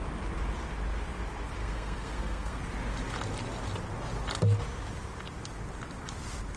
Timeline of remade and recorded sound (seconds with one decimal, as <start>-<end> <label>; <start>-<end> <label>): 0.0-1.6 recorded; 1.6-2.6 remade; 2.6-6.6 recorded